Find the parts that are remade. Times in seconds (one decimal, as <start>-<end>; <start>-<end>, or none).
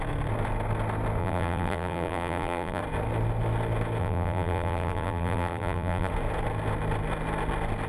1.2-2.8; 4.0-6.1